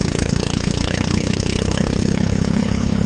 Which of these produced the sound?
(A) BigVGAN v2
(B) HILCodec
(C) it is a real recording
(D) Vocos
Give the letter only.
B